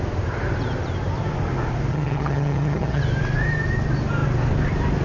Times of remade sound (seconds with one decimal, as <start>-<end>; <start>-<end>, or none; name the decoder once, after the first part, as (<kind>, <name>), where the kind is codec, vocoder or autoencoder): 1.9-3.0 (vocoder, HiFi-GAN)